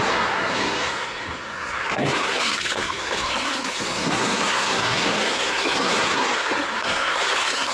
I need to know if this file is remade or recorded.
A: remade